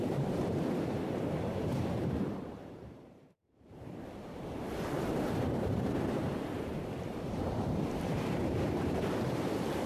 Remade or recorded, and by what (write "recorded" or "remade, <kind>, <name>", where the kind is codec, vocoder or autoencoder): remade, vocoder, BigVGAN v2